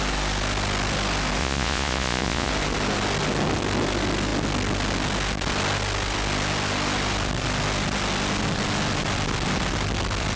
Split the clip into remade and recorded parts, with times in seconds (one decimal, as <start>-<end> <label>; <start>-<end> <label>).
0.0-1.4 recorded; 1.4-2.5 remade; 2.5-10.4 recorded